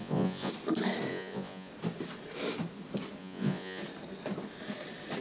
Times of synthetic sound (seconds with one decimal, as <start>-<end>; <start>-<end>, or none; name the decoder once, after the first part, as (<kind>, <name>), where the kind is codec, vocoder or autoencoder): 0.0-0.5 (vocoder, Vocos); 1.1-1.7; 3.2-3.8